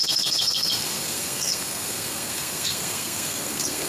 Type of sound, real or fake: fake